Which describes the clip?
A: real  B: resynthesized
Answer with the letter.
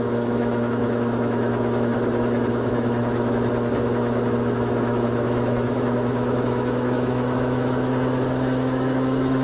B